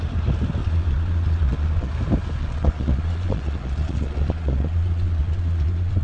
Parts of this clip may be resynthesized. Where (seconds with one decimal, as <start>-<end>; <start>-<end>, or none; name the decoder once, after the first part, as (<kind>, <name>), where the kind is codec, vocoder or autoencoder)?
0.6-1.9 (vocoder, Vocos); 2.4-6.0